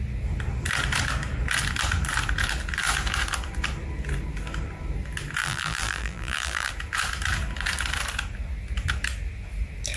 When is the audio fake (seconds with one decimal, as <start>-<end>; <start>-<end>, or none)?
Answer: 5.4-6.7